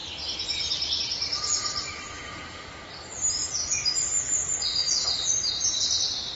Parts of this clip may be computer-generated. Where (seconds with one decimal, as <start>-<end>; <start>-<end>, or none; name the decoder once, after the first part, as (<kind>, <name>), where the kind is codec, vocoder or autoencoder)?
none